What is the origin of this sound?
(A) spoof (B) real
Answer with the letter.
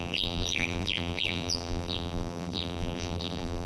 A